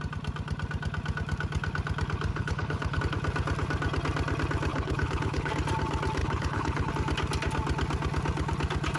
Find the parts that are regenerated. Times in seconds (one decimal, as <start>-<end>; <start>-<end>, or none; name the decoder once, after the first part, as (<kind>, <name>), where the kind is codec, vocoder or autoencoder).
2.3-3.0 (codec, HILCodec); 4.7-5.5; 6.2-6.9